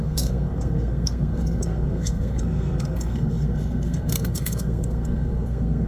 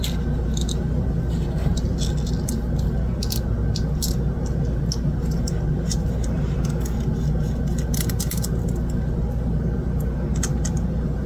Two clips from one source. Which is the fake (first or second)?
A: first